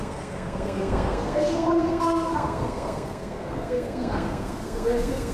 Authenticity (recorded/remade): remade